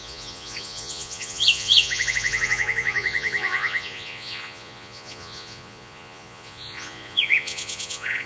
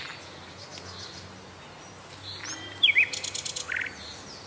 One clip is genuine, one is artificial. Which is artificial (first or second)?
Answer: first